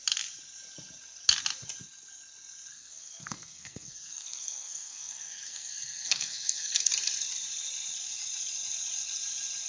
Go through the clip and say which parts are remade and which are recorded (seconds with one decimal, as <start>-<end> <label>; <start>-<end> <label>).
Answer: 0.0-2.7 recorded; 2.7-6.9 remade; 6.9-9.7 recorded